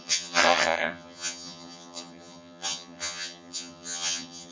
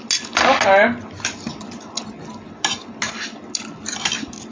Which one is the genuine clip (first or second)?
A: second